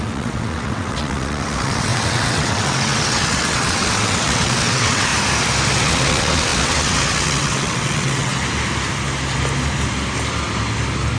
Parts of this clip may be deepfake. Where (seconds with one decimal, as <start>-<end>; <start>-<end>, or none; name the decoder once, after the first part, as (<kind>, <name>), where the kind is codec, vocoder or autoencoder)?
0.0-5.1 (vocoder, WaveNeXt); 5.8-8.3